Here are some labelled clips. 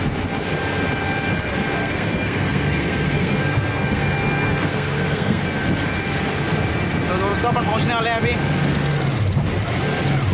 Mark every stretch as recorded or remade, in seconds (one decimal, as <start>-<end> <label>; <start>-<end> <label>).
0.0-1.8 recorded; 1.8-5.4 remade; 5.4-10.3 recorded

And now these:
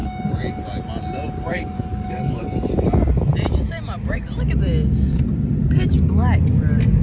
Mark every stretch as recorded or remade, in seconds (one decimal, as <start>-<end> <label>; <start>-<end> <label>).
0.0-0.6 remade; 0.6-1.5 recorded; 1.5-2.7 remade; 2.7-7.0 recorded

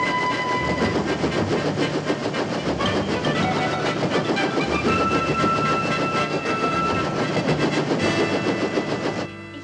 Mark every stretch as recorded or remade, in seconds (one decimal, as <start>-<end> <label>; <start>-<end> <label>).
0.0-6.2 recorded; 6.2-6.8 remade; 6.8-9.6 recorded

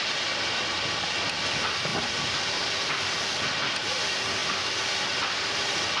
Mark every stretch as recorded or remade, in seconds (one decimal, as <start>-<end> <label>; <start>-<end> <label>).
0.0-4.4 recorded; 4.4-5.0 remade; 5.0-6.0 recorded

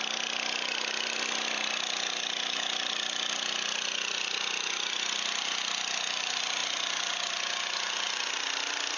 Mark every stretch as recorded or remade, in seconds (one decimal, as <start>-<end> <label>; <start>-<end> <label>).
0.0-9.0 recorded

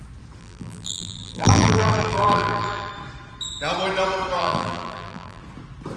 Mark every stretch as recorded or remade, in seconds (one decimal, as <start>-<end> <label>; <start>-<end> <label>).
0.0-0.4 recorded; 0.4-2.9 remade; 2.9-4.4 recorded; 4.4-5.4 remade; 5.4-6.0 recorded